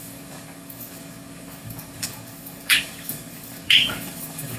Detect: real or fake fake